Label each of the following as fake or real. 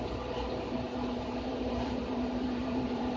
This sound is fake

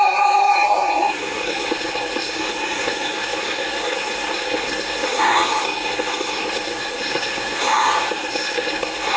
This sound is fake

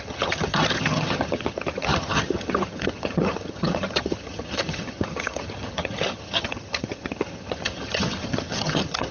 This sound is fake